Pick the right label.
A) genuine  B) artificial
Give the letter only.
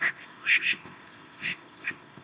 B